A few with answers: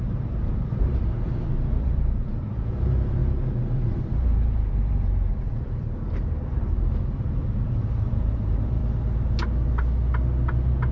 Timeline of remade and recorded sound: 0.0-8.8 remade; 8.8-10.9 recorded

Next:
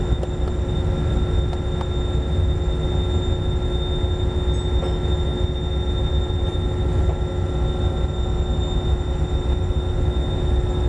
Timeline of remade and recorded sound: 0.0-10.9 recorded

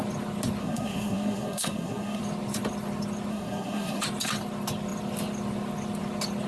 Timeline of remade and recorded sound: 0.0-0.6 recorded; 0.6-2.2 remade; 2.2-3.3 recorded; 3.3-4.0 remade; 4.0-6.5 recorded

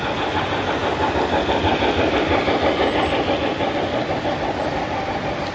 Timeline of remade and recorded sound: 0.0-5.5 recorded

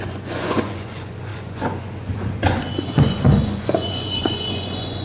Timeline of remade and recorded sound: 0.0-5.0 remade

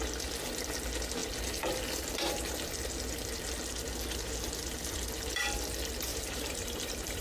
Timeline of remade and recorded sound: 0.0-6.1 recorded; 6.1-7.2 remade

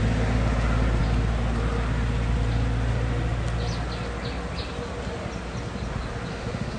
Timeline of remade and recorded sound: 0.0-6.3 recorded; 6.3-6.8 remade

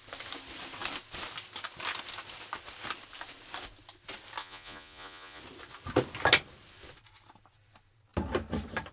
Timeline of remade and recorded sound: 0.0-4.4 recorded; 4.4-5.4 remade; 5.4-8.9 recorded